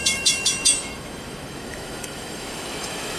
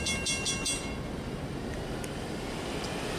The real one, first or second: second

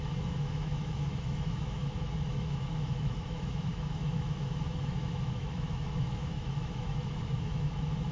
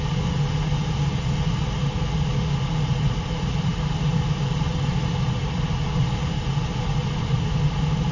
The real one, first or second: second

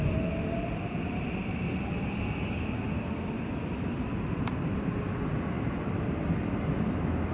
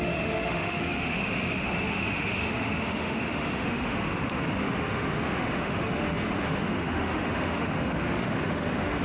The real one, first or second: first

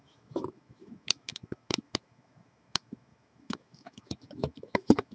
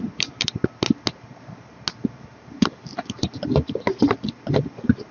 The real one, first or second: second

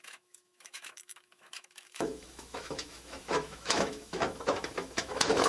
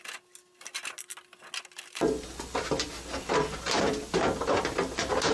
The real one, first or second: second